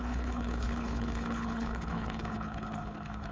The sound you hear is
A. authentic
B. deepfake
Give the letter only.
B